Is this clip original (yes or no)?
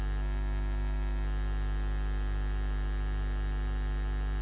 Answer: yes